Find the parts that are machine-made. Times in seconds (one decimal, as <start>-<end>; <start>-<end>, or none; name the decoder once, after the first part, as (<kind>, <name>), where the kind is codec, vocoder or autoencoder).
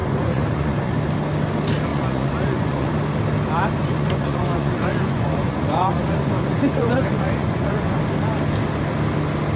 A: 0.0-0.9 (vocoder, Vocos); 1.9-2.9; 3.8-8.0